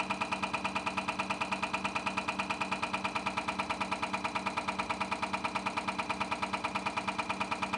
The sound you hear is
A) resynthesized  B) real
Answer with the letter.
B